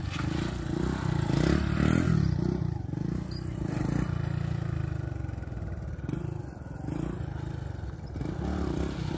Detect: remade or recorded recorded